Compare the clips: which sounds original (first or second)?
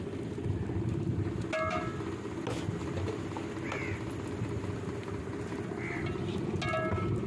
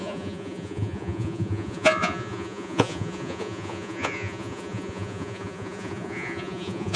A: first